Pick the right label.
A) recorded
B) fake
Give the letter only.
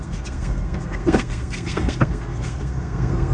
B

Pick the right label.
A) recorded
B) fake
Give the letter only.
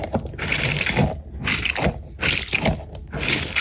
A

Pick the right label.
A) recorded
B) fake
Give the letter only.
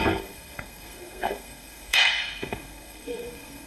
B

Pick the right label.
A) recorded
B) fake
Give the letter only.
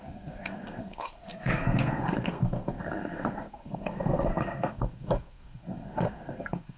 B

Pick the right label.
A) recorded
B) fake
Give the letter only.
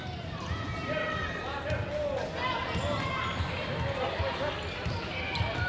A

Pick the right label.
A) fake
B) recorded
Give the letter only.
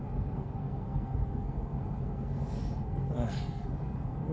A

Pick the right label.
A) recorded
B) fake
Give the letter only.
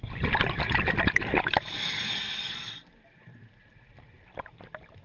A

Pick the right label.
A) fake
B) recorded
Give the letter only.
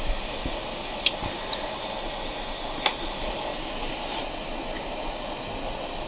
B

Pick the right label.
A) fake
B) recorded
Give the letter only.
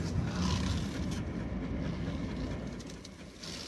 B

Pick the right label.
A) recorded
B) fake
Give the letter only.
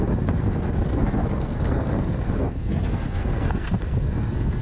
B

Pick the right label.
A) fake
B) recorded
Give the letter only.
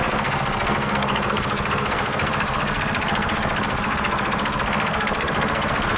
A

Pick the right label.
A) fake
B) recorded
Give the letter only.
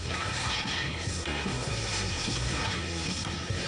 A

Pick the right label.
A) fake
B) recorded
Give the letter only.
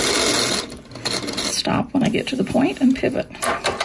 B